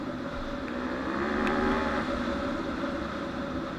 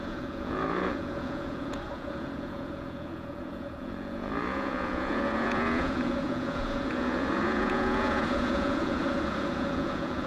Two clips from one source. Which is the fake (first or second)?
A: second